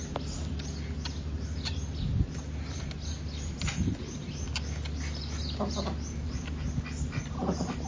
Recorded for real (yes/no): yes